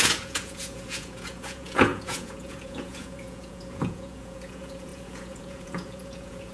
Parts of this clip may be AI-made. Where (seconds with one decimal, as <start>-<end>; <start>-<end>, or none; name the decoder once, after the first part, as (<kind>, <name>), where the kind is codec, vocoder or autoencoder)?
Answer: 0.0-6.5 (vocoder, Vocos)

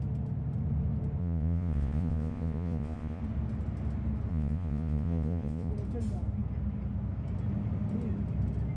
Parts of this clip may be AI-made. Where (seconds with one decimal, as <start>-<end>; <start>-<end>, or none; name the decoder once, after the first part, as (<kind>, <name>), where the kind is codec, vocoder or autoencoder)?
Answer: 1.2-3.2 (vocoder, Vocos); 4.3-5.7